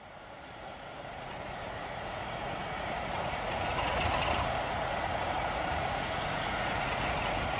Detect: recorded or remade remade